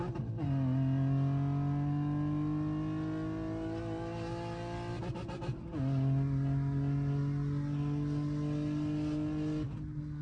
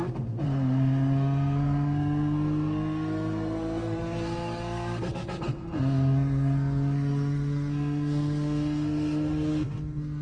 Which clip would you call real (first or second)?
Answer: first